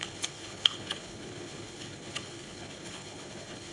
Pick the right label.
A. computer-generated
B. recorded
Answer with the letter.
A